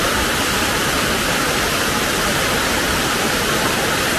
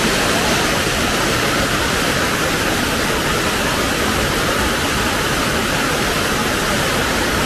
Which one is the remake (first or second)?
first